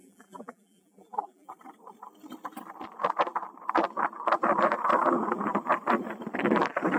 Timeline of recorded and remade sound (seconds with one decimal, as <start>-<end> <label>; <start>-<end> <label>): 0.0-1.5 remade; 1.5-7.0 recorded